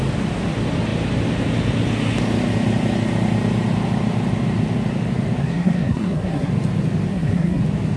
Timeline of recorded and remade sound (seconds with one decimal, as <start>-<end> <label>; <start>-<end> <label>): 0.0-5.4 recorded; 5.4-6.5 remade; 6.5-7.1 recorded; 7.1-7.6 remade; 7.6-8.0 recorded